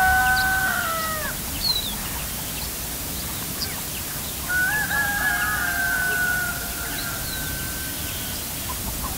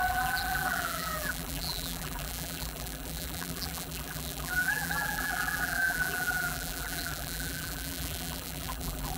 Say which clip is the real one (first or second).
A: first